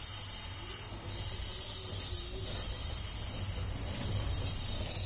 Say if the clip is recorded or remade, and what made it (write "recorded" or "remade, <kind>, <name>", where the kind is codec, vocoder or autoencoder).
recorded